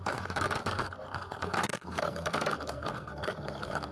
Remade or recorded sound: remade